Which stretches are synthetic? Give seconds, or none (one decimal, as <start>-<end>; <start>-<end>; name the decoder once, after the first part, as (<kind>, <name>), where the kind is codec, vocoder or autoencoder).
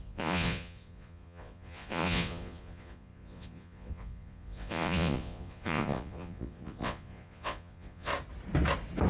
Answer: 0.0-8.1 (vocoder, Vocos)